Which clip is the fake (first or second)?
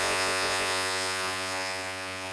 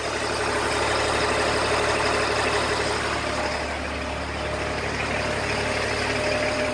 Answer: first